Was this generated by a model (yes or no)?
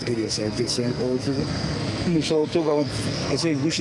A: yes